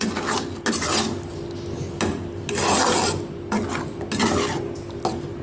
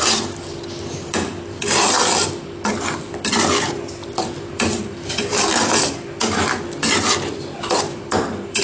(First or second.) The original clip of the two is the first